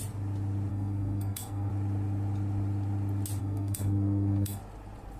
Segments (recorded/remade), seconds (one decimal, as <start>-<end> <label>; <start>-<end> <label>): 0.0-0.7 recorded; 0.7-1.7 remade; 1.7-3.4 recorded; 3.4-4.6 remade; 4.6-5.2 recorded